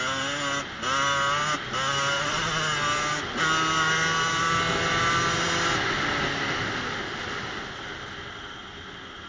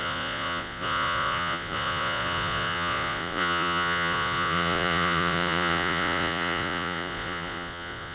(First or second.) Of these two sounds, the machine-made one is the second